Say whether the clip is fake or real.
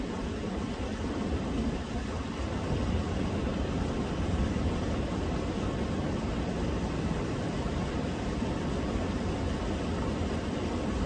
real